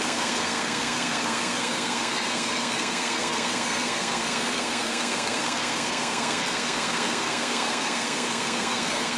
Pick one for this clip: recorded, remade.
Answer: remade